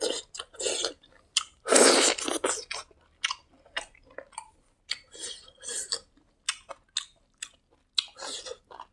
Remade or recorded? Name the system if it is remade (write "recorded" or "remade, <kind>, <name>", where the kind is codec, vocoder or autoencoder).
recorded